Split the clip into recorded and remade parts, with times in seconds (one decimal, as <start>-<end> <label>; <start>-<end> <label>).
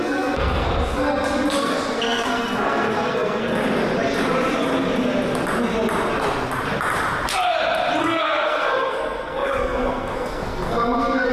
0.0-0.7 remade; 0.7-1.6 recorded; 1.6-3.6 remade; 3.6-8.0 recorded; 8.0-11.3 remade